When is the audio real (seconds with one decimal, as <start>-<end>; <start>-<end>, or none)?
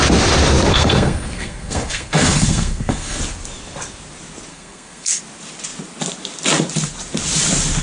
0.0-0.7; 3.2-4.5; 5.2-7.8